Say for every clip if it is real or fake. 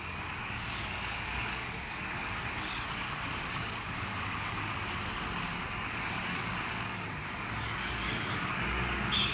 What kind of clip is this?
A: fake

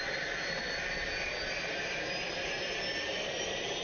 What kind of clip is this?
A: real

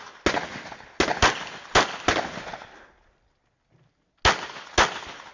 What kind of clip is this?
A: real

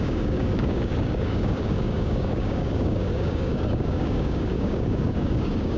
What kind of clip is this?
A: fake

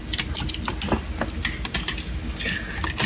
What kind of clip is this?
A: real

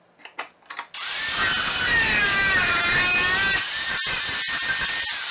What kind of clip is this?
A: real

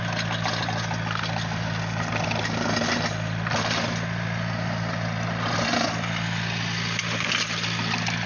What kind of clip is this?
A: real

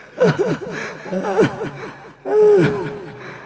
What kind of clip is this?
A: real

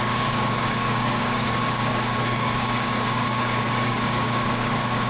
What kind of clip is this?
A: fake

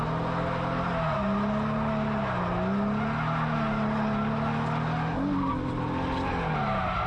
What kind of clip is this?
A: real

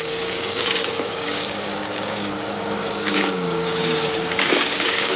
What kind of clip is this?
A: fake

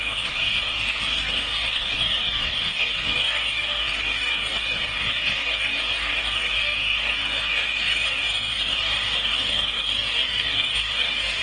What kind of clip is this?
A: fake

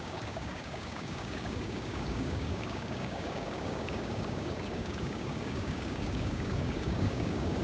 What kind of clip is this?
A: fake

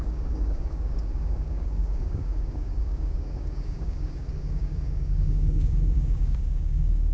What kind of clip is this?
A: fake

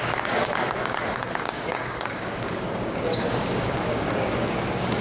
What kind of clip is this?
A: fake